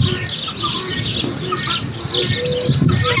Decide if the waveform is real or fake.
real